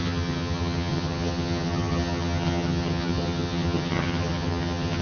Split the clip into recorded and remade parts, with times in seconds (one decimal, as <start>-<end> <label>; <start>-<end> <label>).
0.0-5.0 remade